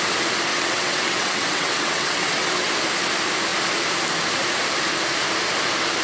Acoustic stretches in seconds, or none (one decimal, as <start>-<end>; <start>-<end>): 0.0-0.5; 2.7-6.0